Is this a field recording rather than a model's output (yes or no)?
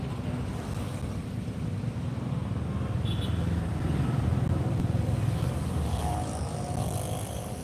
yes